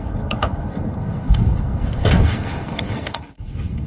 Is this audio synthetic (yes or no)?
yes